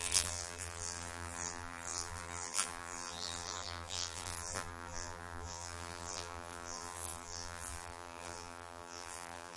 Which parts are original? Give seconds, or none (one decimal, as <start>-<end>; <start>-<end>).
none